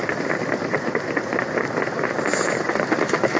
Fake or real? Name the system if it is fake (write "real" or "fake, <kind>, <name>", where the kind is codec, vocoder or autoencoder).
real